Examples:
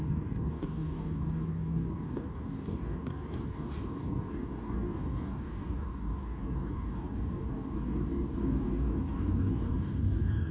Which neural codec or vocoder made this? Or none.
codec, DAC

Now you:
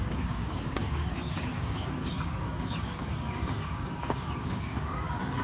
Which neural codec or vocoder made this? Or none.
codec, DAC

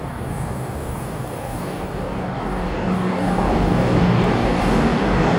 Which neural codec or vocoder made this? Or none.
codec, DAC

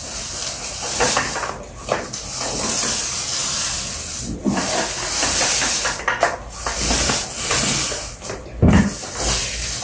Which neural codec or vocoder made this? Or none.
none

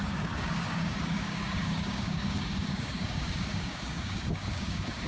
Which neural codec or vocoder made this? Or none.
codec, DAC